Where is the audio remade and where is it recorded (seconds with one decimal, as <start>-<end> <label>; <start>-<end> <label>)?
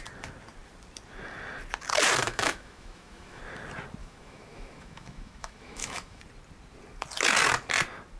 0.0-2.2 recorded; 2.2-3.4 remade; 3.4-4.0 recorded; 4.0-6.2 remade; 6.2-8.2 recorded